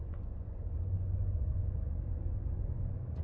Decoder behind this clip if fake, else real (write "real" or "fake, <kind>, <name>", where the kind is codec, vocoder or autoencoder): fake, vocoder, Vocos